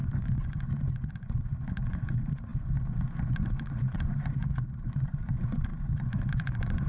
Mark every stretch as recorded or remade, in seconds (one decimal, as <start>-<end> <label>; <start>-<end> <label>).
0.0-6.9 remade